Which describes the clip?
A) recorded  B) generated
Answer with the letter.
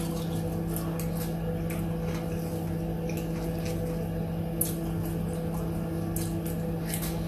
A